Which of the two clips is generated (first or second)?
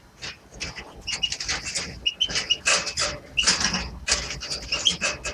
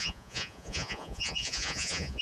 second